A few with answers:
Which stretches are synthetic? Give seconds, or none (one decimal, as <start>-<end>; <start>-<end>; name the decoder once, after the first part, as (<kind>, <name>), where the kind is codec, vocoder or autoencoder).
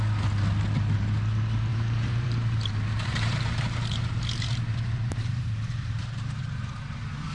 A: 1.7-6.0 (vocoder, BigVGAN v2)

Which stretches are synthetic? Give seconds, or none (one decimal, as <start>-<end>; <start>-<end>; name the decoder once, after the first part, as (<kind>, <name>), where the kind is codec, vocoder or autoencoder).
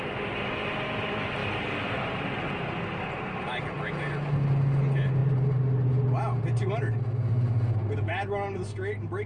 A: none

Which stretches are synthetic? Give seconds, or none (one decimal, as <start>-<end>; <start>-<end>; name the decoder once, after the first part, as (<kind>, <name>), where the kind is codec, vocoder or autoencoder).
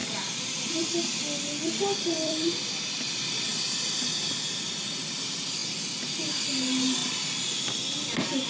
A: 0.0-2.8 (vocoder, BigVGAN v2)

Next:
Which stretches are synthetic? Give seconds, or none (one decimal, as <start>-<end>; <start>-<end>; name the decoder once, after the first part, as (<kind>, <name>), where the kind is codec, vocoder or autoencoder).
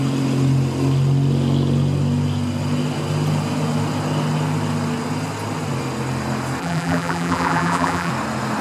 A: 6.6-8.1 (vocoder, BigVGAN v2)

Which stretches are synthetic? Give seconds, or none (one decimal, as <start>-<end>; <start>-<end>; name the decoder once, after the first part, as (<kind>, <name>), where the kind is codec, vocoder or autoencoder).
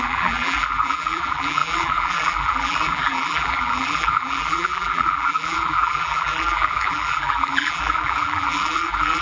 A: 0.0-9.2 (vocoder, BigVGAN v2)